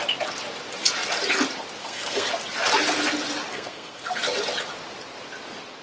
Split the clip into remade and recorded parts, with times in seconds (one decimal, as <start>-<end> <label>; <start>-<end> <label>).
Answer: 0.0-1.8 recorded; 1.8-2.3 remade; 2.3-3.5 recorded; 3.5-4.2 remade; 4.2-5.8 recorded